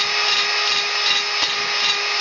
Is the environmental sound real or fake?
real